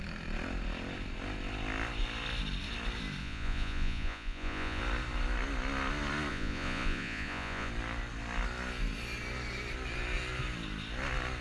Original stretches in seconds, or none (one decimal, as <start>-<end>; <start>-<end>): 0.0-3.2; 4.8-6.3; 7.7-11.4